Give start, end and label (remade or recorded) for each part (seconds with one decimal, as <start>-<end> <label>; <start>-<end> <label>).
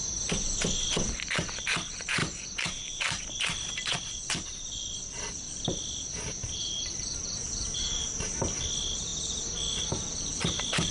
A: 0.0-2.2 recorded; 2.2-3.2 remade; 3.2-6.4 recorded; 6.4-8.6 remade; 8.6-10.9 recorded